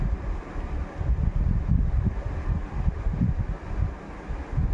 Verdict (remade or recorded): recorded